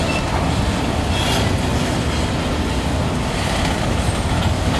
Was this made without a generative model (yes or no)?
yes